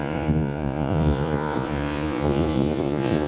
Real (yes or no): no